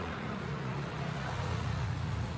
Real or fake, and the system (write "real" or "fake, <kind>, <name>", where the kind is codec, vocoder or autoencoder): fake, vocoder, Vocos